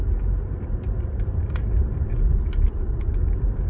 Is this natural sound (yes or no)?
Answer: no